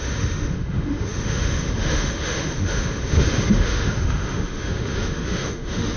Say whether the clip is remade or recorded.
remade